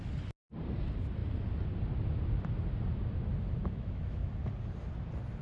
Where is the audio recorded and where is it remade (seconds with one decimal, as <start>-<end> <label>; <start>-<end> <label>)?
0.0-3.6 recorded; 3.6-4.3 remade; 4.3-5.4 recorded